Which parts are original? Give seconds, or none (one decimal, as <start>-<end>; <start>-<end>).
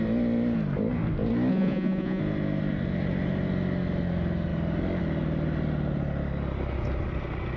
0.0-1.5; 2.2-7.6